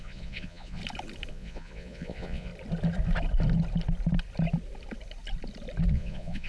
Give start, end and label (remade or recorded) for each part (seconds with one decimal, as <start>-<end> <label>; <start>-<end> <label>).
0.0-0.8 remade; 0.8-1.3 recorded; 1.3-2.5 remade; 2.5-5.9 recorded; 5.9-6.5 remade